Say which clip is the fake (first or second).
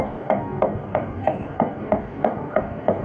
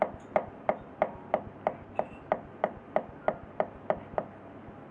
first